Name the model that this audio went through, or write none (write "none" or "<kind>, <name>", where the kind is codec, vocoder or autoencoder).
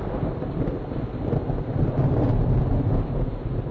none